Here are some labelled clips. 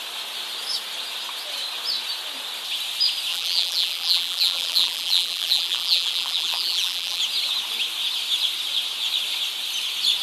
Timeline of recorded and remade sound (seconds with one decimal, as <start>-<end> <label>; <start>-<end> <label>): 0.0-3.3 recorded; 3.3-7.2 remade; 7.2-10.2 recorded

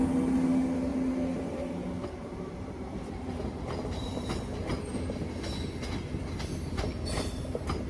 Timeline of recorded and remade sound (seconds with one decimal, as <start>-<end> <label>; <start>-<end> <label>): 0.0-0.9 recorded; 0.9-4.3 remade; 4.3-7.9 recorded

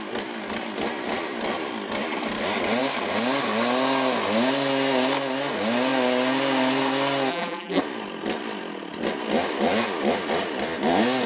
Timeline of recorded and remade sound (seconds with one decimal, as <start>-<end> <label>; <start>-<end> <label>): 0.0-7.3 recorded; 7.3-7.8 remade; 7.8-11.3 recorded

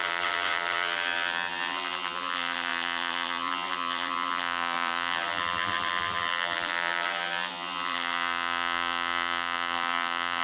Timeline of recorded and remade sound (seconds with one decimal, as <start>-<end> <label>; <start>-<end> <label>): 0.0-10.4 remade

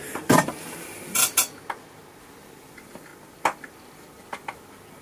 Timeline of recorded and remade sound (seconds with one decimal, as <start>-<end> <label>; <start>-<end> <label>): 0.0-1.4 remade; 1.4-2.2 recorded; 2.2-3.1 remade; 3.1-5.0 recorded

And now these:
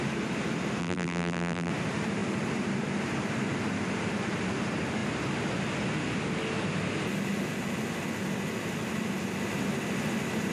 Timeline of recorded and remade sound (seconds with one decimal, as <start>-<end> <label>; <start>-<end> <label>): 0.0-0.8 recorded; 0.8-1.7 remade; 1.7-10.5 recorded

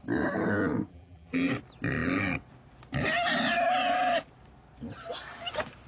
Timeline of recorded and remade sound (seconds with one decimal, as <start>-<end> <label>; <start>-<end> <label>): 0.0-0.9 recorded; 0.9-1.5 remade; 1.5-5.9 recorded